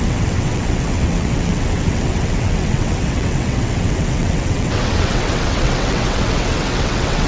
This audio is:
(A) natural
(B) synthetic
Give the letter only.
B